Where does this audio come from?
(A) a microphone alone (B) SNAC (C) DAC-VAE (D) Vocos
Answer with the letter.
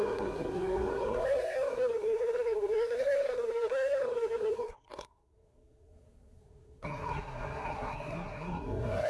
B